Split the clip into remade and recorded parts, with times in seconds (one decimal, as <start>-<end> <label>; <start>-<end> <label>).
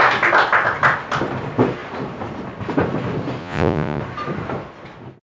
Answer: 0.0-3.4 recorded; 3.4-4.0 remade; 4.0-5.3 recorded